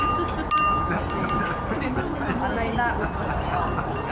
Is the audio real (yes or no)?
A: yes